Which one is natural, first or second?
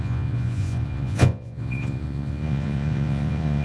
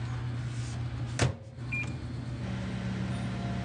second